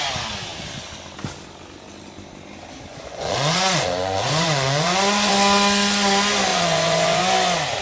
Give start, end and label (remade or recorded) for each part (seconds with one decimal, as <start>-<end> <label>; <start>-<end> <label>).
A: 0.0-2.9 recorded; 2.9-5.3 remade; 5.3-6.5 recorded; 6.5-7.2 remade; 7.2-7.8 recorded